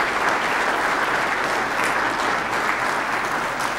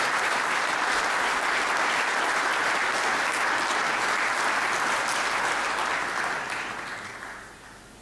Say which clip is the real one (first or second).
first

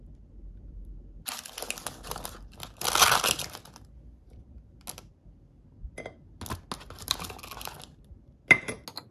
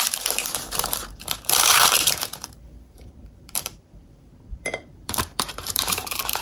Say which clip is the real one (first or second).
first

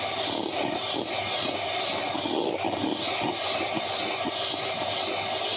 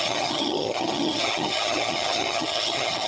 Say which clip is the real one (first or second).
first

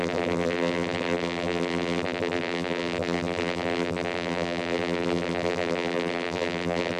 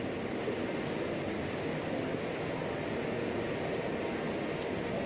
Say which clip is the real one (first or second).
second